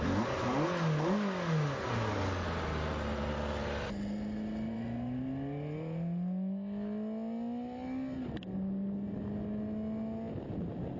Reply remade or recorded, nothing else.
recorded